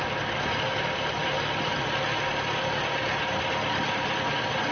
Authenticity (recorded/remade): recorded